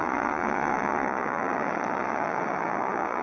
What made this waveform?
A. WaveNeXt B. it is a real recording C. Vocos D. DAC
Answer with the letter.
C